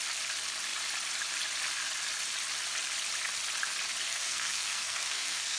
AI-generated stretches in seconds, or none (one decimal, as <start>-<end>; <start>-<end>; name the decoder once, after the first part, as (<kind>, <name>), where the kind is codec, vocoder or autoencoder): 4.1-5.6 (codec, SNAC)